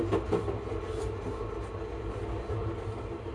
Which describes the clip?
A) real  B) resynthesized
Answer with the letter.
A